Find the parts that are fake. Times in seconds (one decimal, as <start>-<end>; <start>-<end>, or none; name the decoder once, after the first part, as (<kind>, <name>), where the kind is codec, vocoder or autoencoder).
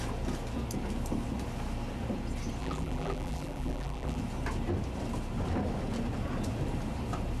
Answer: 2.6-4.2 (vocoder, BigVGAN v2)